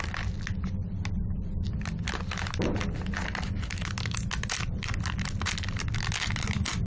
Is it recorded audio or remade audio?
recorded